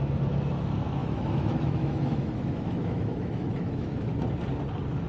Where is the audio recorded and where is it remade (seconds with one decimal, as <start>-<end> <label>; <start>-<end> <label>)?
0.0-1.0 recorded; 1.0-4.1 remade; 4.1-5.1 recorded